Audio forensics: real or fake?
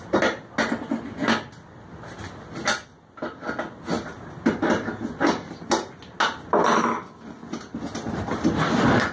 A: real